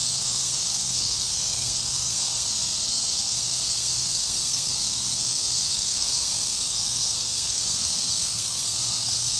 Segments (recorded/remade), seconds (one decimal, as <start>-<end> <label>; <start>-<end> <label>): 0.0-9.4 remade